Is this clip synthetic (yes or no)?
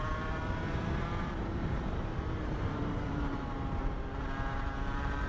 yes